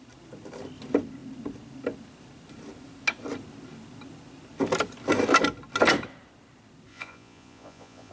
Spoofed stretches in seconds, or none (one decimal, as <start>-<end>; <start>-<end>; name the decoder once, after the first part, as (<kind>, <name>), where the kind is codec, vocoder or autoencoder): 6.9-8.1 (vocoder, Vocos)